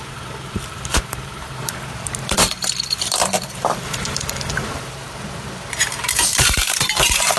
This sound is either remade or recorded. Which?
remade